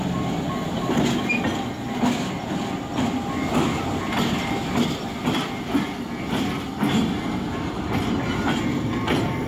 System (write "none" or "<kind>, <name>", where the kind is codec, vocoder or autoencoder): none